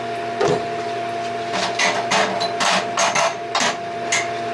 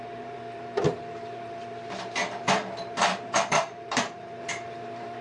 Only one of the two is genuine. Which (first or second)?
first